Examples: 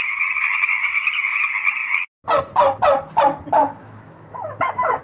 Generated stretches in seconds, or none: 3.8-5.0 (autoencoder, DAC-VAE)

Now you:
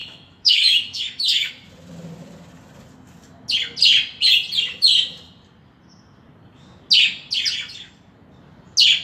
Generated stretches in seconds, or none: 0.0-1.5 (autoencoder, DAC-VAE)

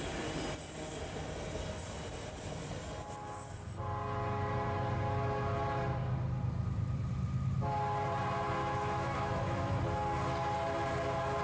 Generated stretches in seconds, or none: 8.6-9.8 (autoencoder, DAC-VAE)

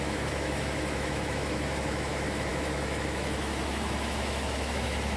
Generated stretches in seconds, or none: 0.0-5.2 (autoencoder, DAC-VAE)

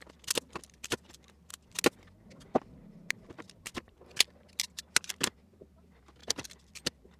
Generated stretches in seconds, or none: none

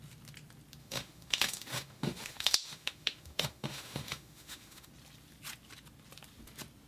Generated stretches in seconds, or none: 0.8-4.9 (autoencoder, DAC-VAE)

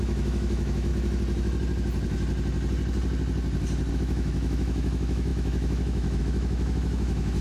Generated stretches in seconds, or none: 0.0-0.9 (autoencoder, DAC-VAE); 3.9-7.4